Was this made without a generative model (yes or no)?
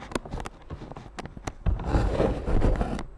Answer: yes